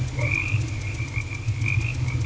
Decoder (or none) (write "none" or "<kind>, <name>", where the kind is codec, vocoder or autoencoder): none